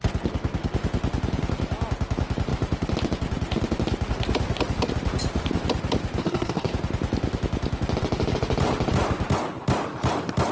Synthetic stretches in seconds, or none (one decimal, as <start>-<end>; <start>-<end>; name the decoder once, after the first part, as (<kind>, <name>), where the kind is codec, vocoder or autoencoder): 6.2-6.7 (codec, SNAC)